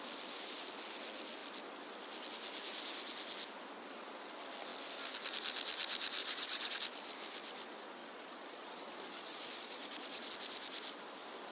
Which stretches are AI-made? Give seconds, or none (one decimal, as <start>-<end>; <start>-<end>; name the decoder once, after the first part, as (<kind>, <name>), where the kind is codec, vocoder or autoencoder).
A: 6.2-6.8 (vocoder, Vocos); 8.0-10.3